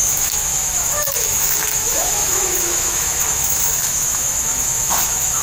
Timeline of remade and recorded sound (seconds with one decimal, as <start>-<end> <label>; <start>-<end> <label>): 0.0-5.4 remade